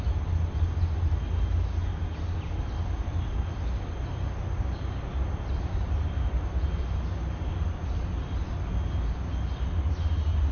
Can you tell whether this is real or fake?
real